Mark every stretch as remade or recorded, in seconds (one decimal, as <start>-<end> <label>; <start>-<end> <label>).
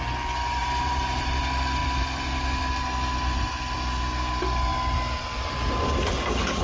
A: 0.0-0.6 recorded; 0.6-1.4 remade; 1.4-6.6 recorded